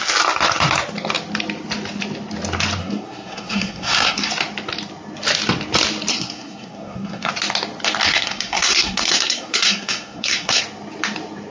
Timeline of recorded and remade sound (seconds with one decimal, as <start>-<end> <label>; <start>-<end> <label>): 0.0-2.8 recorded; 2.8-4.3 remade; 4.3-6.1 recorded; 6.1-7.3 remade; 7.3-8.1 recorded; 8.1-10.6 remade; 10.6-11.5 recorded